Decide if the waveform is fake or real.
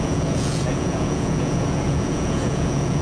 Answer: fake